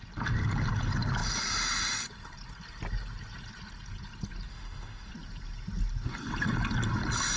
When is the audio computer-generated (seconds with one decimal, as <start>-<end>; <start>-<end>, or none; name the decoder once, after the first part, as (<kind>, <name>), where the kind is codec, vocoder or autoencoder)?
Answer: 4.5-5.1 (autoencoder, DAC-VAE)